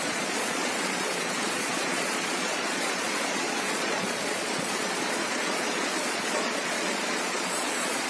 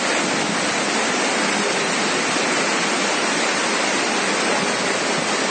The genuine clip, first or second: second